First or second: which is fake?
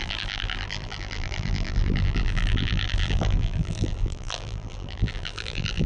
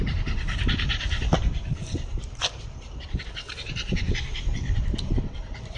first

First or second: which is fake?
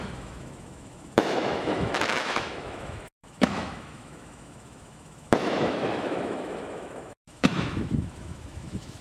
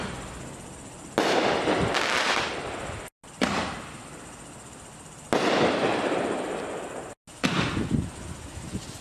first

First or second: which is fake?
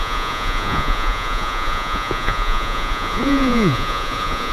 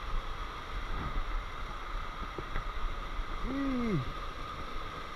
first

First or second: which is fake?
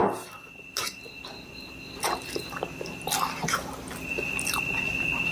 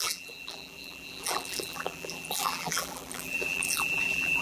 second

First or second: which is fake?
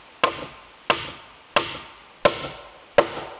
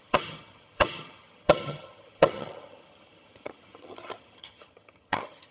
second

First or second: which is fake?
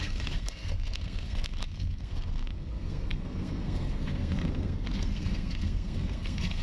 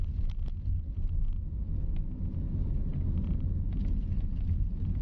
first